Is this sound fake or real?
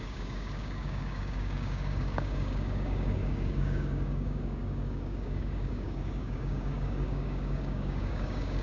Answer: fake